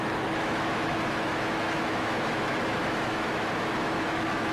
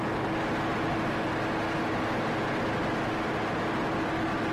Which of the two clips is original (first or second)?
second